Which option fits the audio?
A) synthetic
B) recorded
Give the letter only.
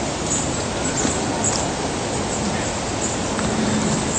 B